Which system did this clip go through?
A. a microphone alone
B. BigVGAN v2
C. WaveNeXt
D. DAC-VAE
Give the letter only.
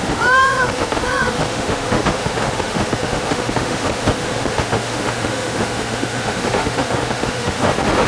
D